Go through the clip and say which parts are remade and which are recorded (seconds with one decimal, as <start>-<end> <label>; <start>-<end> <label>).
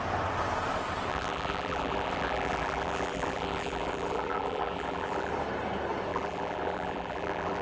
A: 0.0-1.1 recorded; 1.1-5.3 remade; 5.3-6.1 recorded; 6.1-7.6 remade